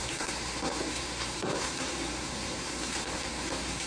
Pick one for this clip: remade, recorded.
remade